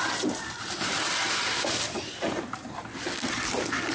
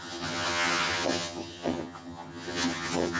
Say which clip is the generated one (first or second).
second